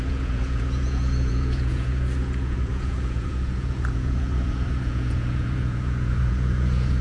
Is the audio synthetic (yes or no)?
yes